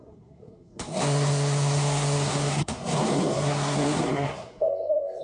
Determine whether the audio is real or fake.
fake